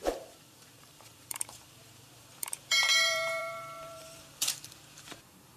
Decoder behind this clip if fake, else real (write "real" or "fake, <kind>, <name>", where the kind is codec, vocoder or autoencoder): fake, vocoder, BigVGAN v2